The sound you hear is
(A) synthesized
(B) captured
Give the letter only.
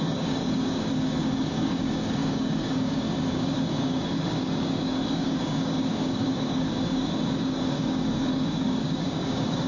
A